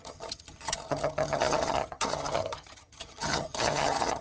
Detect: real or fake fake